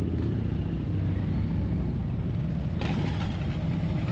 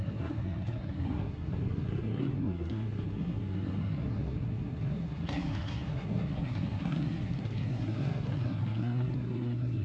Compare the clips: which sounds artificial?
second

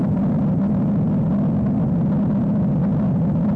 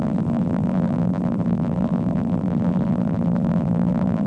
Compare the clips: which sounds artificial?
second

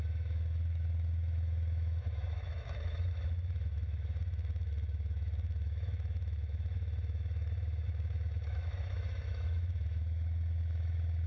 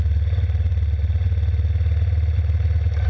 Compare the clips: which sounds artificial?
first